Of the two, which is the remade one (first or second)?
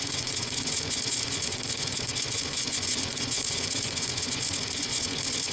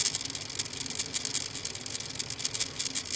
first